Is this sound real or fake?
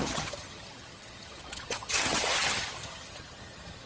fake